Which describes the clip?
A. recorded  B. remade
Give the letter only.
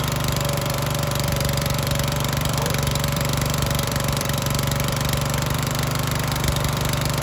B